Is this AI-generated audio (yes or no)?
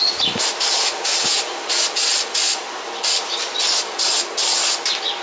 no